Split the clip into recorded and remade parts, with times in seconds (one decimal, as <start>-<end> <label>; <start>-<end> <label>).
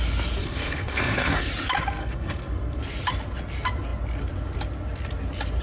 0.0-0.4 recorded; 0.4-1.5 remade; 1.5-2.0 recorded; 2.0-2.8 remade; 2.8-5.6 recorded